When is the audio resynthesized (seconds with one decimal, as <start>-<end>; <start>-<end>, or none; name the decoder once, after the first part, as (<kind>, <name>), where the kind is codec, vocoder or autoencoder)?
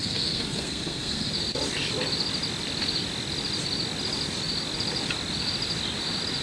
0.0-1.3 (codec, SNAC)